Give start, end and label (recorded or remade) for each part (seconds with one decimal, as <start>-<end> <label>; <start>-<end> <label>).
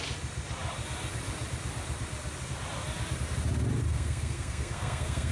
0.0-3.9 recorded; 3.9-5.3 remade